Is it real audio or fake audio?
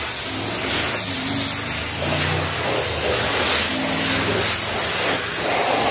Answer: real